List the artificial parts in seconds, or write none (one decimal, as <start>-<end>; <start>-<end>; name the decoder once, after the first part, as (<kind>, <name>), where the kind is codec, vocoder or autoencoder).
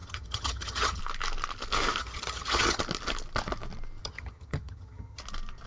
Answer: 0.0-1.0 (vocoder, HiFi-GAN); 2.0-2.8; 4.0-5.2